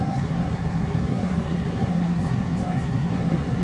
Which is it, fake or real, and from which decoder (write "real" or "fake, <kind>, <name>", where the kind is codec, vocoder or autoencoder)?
fake, codec, SNAC